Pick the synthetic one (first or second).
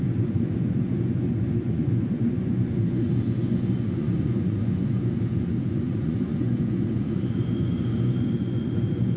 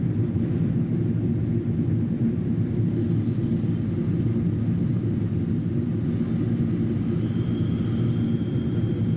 first